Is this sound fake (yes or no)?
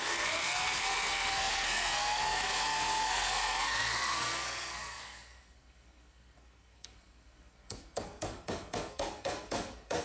yes